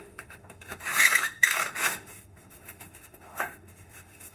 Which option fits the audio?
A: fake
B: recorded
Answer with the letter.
A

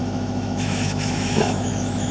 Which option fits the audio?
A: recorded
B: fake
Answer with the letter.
B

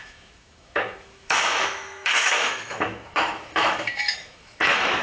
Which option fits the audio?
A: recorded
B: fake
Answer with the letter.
B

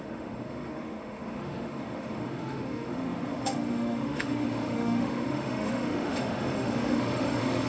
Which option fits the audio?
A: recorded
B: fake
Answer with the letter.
B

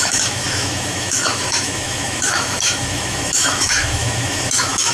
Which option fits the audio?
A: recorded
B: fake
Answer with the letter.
B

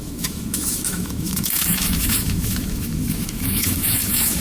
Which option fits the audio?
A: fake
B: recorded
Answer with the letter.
A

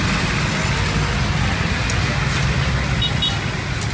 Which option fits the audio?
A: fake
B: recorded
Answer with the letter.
B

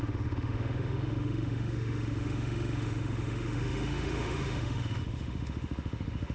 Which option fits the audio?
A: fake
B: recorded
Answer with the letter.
A